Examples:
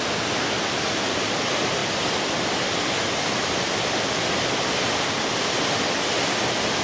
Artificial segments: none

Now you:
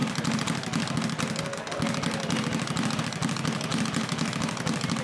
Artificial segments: none

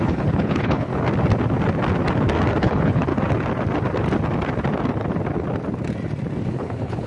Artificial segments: 0.0-0.9 (codec, HILCodec); 2.6-3.1; 6.5-7.1

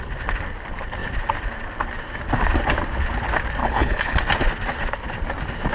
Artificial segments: 3.6-4.2 (codec, HILCodec)